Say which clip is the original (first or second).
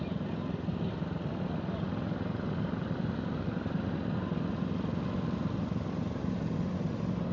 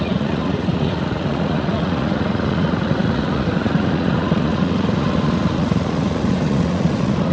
first